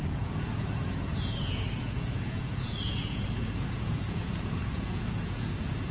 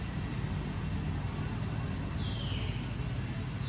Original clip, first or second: second